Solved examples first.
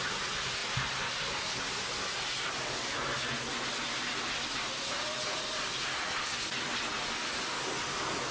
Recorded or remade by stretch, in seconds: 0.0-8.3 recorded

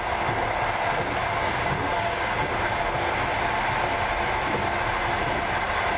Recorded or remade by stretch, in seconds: 0.0-1.2 recorded; 1.2-2.7 remade; 2.7-6.0 recorded

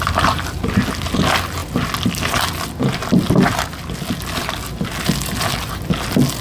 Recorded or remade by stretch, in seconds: 0.0-6.4 recorded

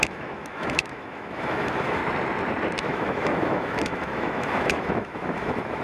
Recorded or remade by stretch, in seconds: 0.0-2.0 remade; 2.0-2.8 recorded; 2.8-5.8 remade

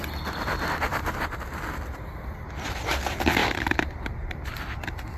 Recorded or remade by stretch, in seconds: 0.0-0.9 recorded; 0.9-1.6 remade; 1.6-3.4 recorded; 3.4-4.5 remade; 4.5-5.2 recorded

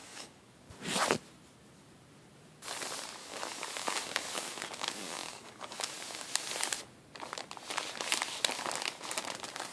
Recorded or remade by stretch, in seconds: 0.0-0.7 remade; 0.7-3.2 recorded; 3.2-6.2 remade; 6.2-9.7 recorded

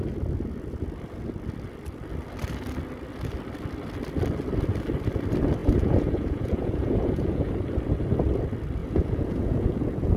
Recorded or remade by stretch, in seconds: 0.0-5.6 recorded; 5.6-7.5 remade; 7.5-8.8 recorded; 8.8-10.2 remade